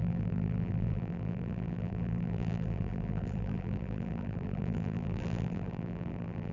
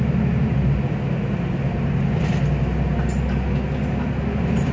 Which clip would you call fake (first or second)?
first